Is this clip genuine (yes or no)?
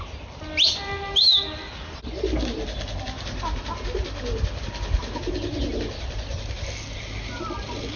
yes